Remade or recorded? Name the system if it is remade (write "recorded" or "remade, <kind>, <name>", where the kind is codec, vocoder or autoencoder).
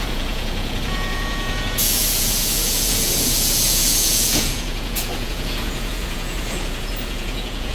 remade, vocoder, Vocos